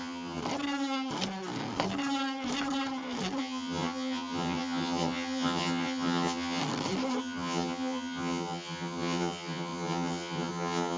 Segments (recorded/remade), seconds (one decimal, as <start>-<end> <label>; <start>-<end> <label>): 0.0-0.4 remade; 0.4-3.4 recorded; 3.4-6.6 remade; 6.6-7.2 recorded; 7.2-11.0 remade